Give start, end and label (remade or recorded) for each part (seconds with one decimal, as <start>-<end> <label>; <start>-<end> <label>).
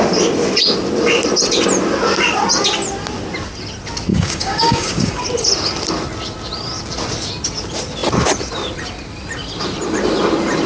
0.0-4.1 recorded; 4.1-5.2 remade; 5.2-10.7 recorded